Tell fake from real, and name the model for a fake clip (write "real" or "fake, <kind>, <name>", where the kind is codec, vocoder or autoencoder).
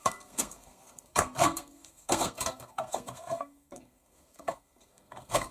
fake, codec, SNAC